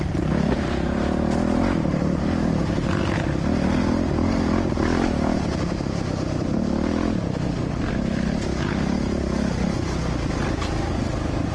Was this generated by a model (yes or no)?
no